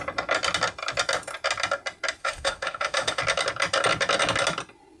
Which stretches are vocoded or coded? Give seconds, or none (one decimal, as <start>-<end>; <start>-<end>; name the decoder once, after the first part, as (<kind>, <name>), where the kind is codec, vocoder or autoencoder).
2.2-3.2 (autoencoder, DAC-VAE)